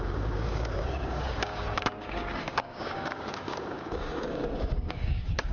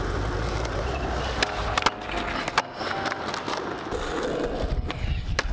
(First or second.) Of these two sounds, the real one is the second